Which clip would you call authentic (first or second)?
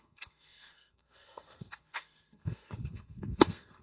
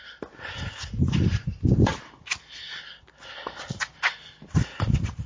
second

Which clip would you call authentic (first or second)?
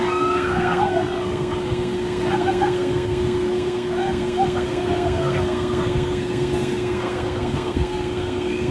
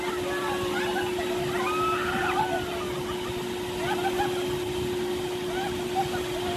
second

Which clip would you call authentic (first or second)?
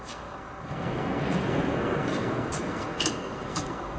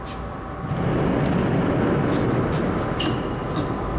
second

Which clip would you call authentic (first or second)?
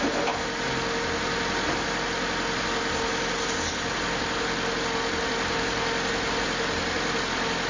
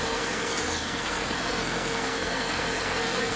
first